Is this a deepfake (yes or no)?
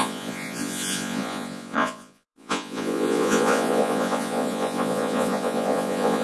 yes